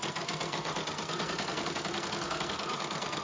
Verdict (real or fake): fake